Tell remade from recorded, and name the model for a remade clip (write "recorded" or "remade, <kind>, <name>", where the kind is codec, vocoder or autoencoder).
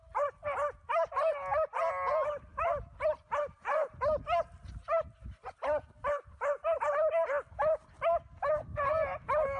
recorded